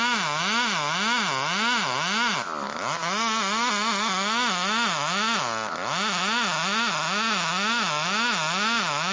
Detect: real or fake real